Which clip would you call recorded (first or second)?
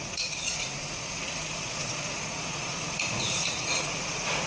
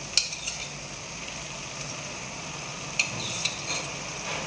second